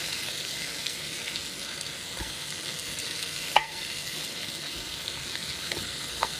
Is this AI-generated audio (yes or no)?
yes